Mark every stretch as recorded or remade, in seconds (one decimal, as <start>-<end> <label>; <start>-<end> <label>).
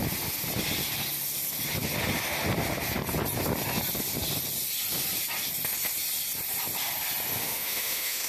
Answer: 0.0-7.4 recorded; 7.4-8.3 remade